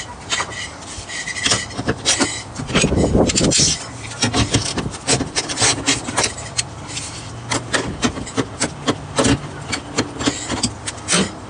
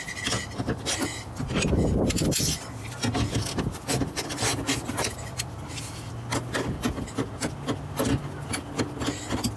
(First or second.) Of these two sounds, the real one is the second